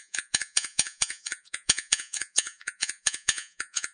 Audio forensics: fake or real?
fake